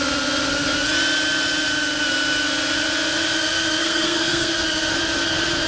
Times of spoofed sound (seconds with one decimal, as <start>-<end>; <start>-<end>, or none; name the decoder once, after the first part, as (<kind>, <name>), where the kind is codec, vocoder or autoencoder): 3.8-4.5 (codec, SNAC)